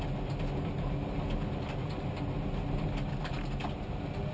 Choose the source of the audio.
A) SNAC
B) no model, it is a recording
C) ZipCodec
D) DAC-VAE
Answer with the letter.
B